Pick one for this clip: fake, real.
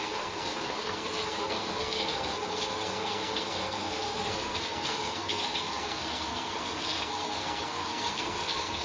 fake